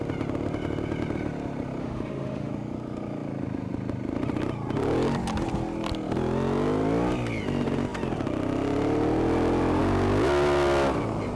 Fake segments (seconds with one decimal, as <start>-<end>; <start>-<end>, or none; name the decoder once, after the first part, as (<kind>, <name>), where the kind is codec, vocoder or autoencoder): 1.8-2.5 (autoencoder, DAC-VAE)